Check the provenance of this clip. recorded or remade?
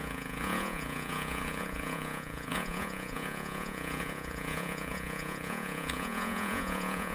remade